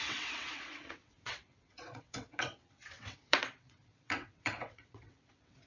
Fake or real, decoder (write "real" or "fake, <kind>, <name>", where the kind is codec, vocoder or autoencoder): fake, vocoder, WaveNeXt